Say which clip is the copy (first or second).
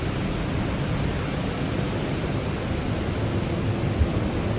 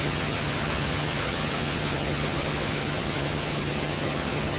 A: second